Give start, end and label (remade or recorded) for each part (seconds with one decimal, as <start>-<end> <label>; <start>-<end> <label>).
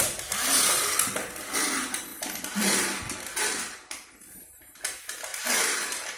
0.0-2.1 recorded; 2.1-4.2 remade; 4.2-5.3 recorded; 5.3-6.2 remade